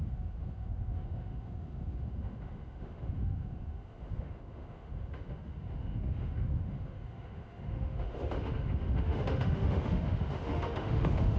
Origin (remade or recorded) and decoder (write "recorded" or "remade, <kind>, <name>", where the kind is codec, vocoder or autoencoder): remade, autoencoder, DAC-VAE